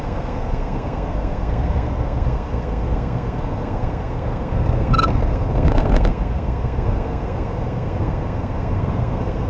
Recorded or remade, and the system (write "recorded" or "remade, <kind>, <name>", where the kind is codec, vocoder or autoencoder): remade, codec, SNAC